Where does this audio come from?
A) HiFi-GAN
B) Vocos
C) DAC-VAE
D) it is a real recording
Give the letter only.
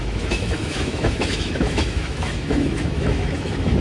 C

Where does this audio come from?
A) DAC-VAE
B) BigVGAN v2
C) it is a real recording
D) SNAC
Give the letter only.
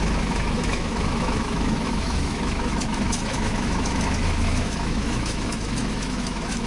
A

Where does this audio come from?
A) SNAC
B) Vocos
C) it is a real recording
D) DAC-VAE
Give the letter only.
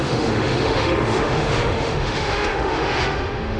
D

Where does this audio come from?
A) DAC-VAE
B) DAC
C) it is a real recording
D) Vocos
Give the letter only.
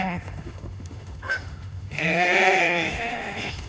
A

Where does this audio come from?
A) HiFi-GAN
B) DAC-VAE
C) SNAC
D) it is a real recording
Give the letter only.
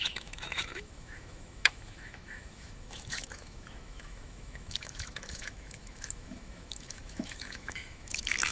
B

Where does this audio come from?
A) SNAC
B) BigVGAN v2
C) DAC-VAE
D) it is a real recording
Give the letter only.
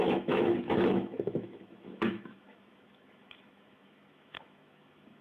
C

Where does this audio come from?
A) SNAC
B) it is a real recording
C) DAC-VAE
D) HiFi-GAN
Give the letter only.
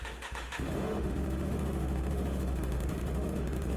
C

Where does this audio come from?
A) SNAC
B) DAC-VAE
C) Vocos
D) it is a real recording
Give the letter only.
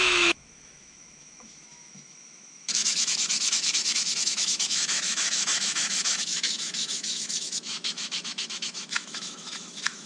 B